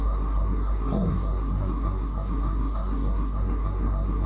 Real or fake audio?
fake